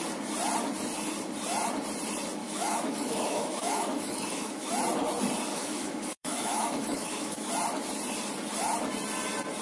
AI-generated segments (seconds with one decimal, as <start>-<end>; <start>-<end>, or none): 2.4-4.7; 5.5-7.5

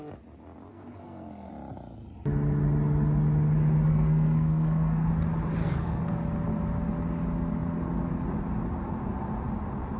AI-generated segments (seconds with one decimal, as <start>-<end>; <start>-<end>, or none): 0.7-1.5; 3.9-5.1; 5.6-6.1

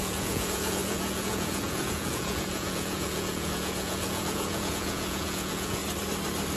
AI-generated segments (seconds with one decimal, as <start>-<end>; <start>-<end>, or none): 0.0-5.8

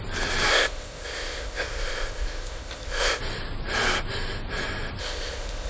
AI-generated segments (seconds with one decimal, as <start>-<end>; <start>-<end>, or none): 0.5-3.2; 5.0-5.7

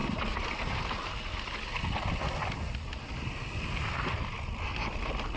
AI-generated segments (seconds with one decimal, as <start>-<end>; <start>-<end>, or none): none